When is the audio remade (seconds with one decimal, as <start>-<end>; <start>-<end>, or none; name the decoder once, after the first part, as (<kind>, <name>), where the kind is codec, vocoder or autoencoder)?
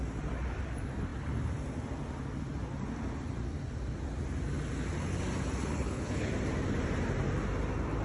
5.6-6.3 (codec, HILCodec)